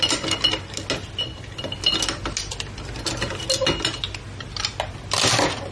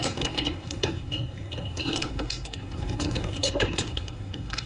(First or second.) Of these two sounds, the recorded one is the first